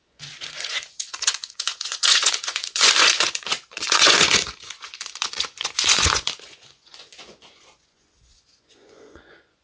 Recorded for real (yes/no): no